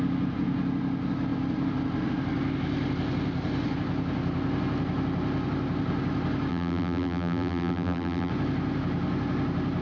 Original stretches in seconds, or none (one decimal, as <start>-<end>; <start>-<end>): 0.0-6.5; 8.3-9.8